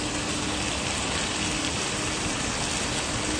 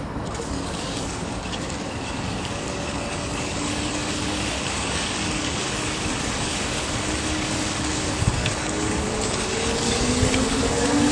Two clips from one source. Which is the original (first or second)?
first